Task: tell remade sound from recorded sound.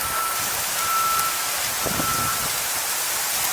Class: recorded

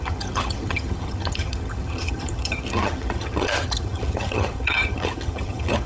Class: remade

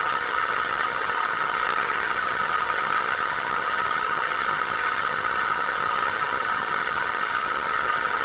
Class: remade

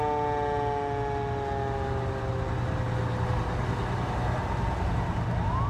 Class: recorded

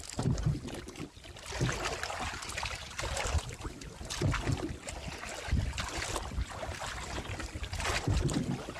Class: recorded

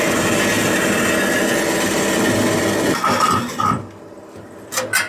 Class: recorded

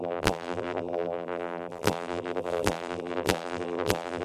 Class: remade